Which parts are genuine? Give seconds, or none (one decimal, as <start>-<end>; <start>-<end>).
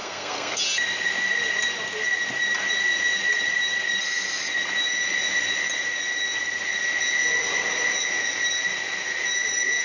0.6-9.8